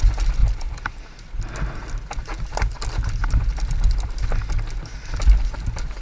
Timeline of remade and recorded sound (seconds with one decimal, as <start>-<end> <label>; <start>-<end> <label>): 0.0-0.4 recorded; 0.4-1.3 remade; 1.3-6.0 recorded